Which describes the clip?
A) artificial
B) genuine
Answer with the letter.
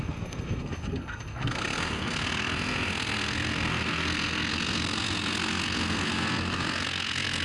A